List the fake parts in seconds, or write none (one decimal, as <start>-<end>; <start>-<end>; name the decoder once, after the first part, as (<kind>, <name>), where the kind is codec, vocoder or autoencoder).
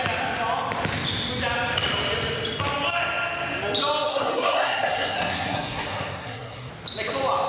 4.1-6.7 (codec, SNAC)